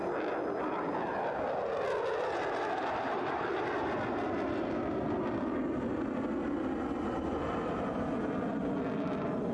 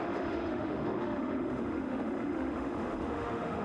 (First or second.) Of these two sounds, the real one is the first